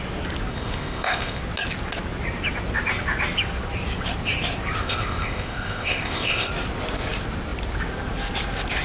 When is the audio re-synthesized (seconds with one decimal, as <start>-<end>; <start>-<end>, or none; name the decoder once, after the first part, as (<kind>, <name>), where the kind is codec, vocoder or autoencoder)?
0.5-1.4 (codec, ZipCodec); 4.8-6.5